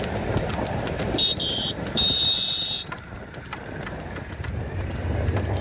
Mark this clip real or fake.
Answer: real